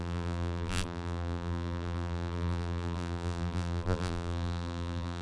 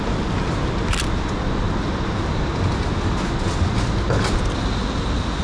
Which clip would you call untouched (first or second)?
second